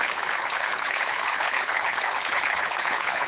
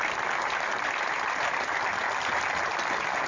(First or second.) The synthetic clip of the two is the first